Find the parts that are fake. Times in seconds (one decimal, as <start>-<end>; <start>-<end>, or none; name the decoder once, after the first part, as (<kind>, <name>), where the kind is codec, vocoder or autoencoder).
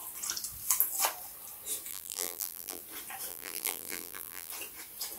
1.9-2.8 (vocoder, BigVGAN v2); 3.3-4.5